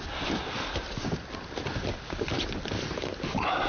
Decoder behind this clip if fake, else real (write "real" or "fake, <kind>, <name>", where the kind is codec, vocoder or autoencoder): real